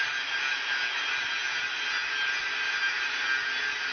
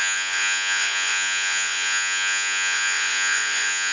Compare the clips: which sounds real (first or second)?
first